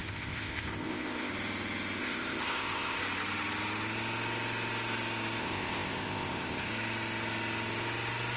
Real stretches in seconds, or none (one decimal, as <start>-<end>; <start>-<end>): 1.3-2.0; 3.0-5.4; 6.7-8.4